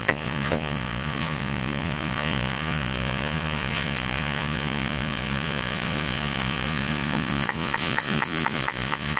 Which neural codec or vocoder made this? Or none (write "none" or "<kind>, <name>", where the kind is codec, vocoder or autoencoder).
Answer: vocoder, Vocos